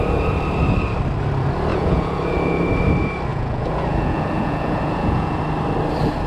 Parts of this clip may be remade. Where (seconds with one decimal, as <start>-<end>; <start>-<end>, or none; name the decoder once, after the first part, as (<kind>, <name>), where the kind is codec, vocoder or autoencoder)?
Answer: 1.7-2.6 (vocoder, Vocos); 3.3-5.4